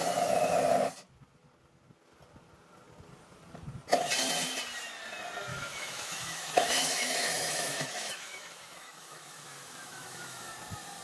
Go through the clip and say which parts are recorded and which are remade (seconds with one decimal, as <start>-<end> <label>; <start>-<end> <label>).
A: 0.0-5.5 recorded; 5.5-10.5 remade; 10.5-11.0 recorded